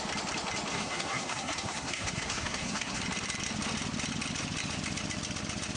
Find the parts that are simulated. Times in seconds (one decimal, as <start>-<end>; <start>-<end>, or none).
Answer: 0.7-3.0